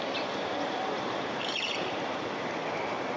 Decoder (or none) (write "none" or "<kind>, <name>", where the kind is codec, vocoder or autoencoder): vocoder, BigVGAN v2